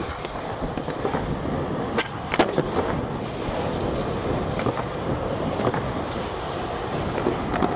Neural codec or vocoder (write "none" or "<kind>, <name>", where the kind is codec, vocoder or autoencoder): none